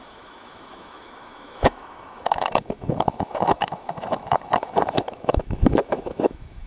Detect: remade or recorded remade